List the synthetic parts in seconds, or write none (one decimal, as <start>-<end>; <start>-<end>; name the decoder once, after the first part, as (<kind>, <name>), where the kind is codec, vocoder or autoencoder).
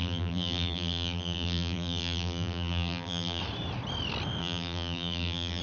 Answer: 0.0-3.4 (vocoder, BigVGAN v2); 4.4-5.6